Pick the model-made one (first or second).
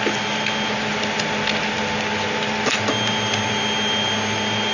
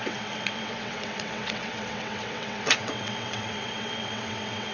second